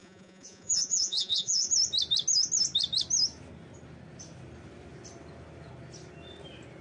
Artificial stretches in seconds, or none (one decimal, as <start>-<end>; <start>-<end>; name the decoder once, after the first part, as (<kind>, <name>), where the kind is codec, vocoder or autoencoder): 0.0-1.7 (vocoder, Vocos)